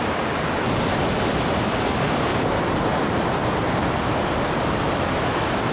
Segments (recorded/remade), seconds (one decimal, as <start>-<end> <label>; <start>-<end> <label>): 0.0-5.7 recorded